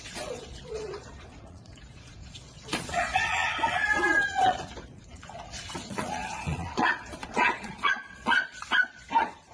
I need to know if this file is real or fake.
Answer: fake